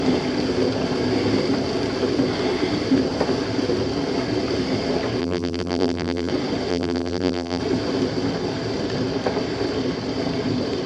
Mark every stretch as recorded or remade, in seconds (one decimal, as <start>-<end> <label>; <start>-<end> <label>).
0.0-5.2 recorded; 5.2-6.3 remade; 6.3-6.7 recorded; 6.7-7.6 remade; 7.6-10.9 recorded